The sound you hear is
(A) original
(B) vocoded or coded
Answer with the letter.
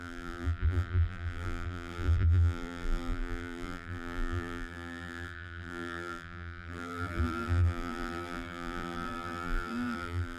B